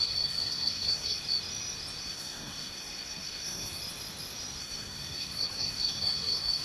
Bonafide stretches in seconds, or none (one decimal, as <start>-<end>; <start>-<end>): 1.2-2.0; 3.8-4.6